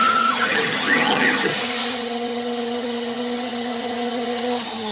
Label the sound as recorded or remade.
remade